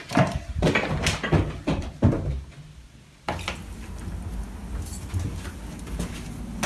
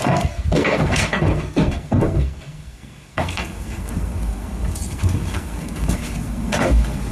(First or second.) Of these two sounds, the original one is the first